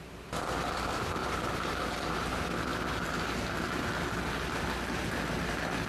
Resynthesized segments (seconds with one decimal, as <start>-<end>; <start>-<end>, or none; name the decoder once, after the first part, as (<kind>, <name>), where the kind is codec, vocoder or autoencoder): 1.2-1.7 (vocoder, BigVGAN v2)